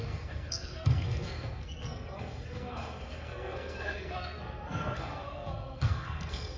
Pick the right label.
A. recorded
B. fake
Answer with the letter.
B